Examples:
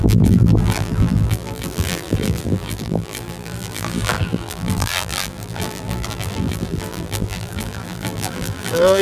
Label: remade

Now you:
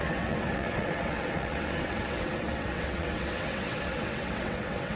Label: remade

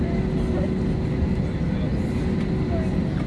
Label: recorded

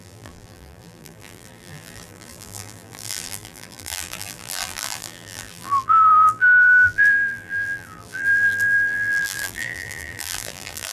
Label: remade